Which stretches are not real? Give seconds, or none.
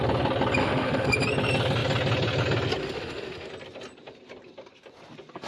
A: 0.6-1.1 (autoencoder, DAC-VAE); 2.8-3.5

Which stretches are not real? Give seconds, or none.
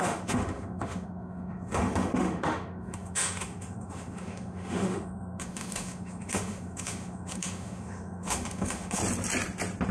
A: 0.0-9.0 (autoencoder, DAC-VAE)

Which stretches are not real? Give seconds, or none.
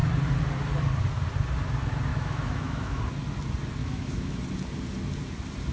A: 2.1-3.0 (autoencoder, DAC-VAE); 3.8-4.4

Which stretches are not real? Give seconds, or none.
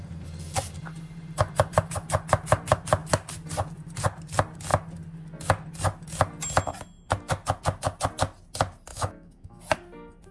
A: 8.9-9.6 (autoencoder, DAC-VAE)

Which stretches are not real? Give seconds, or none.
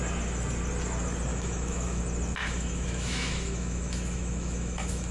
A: 1.3-2.0 (autoencoder, DAC-VAE); 2.4-5.1